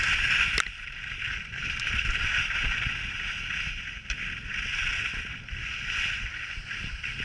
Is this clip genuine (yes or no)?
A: yes